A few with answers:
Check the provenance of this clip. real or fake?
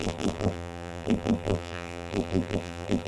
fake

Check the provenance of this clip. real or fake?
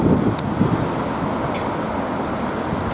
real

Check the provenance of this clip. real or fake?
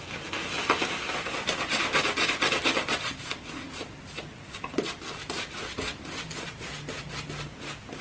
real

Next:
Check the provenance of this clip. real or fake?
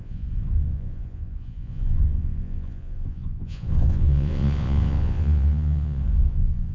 fake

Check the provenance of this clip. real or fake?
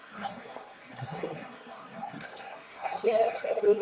fake